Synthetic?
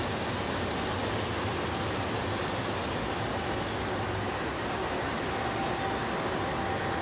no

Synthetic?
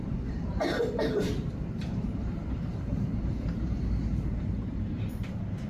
yes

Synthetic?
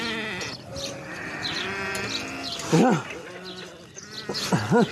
no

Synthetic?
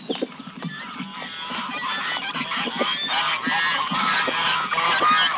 no